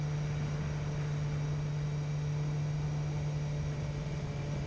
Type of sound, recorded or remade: recorded